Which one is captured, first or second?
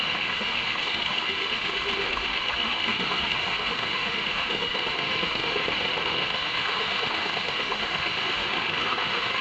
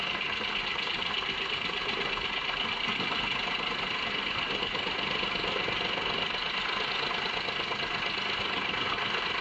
second